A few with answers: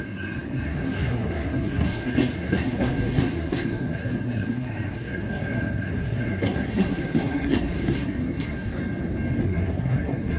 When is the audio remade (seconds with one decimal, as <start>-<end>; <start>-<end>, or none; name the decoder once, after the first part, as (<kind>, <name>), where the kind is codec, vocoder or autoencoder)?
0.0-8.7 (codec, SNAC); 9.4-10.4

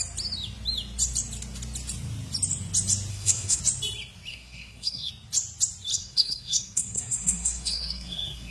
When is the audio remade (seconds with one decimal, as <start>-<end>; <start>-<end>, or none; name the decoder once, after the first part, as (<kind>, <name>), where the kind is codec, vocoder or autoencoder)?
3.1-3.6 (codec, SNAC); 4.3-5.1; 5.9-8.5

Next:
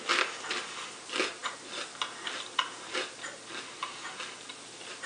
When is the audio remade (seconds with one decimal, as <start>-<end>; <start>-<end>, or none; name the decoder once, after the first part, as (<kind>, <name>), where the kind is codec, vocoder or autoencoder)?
none

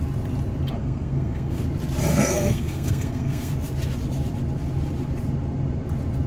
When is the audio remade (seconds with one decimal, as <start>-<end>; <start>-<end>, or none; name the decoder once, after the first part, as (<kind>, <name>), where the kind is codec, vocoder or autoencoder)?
0.8-1.6 (codec, SNAC); 2.1-3.5

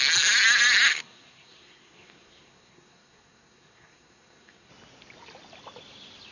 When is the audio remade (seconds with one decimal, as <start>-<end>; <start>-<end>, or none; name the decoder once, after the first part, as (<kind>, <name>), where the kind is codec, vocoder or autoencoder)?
0.9-4.7 (codec, SNAC)

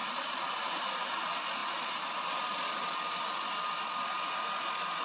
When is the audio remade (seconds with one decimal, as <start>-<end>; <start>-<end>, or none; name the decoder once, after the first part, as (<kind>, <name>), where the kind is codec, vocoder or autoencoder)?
none

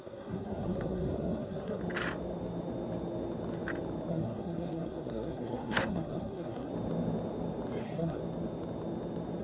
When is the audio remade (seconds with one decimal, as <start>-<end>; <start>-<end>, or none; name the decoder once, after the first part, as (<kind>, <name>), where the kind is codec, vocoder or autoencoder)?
0.0-1.8 (codec, SNAC); 4.1-6.7; 7.8-8.2

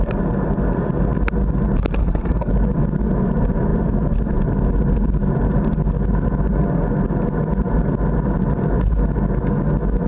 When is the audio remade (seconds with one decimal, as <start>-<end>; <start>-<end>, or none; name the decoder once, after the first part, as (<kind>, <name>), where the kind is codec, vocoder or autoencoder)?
2.0-2.5 (codec, SNAC)